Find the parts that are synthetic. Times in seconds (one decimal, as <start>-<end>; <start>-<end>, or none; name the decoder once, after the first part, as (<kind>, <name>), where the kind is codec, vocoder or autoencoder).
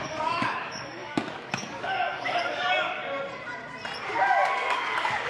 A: 0.0-3.0 (codec, DAC); 4.0-5.3